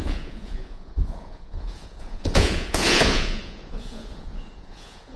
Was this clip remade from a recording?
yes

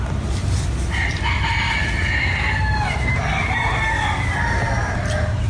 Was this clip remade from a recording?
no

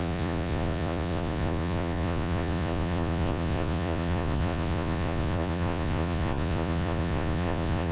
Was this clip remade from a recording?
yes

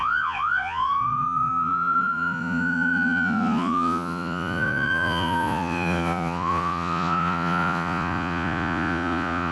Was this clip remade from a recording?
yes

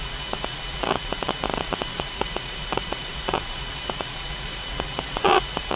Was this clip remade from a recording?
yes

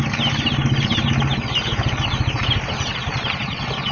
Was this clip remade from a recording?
no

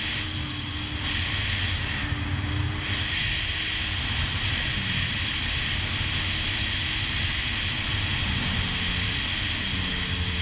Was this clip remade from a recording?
no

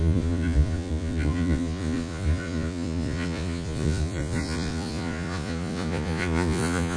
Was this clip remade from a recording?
yes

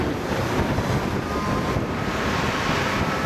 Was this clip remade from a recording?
no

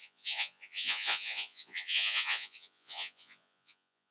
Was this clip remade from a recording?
yes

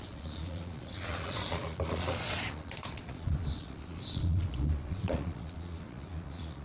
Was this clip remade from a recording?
yes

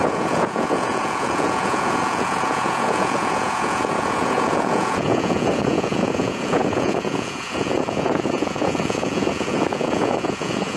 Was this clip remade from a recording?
yes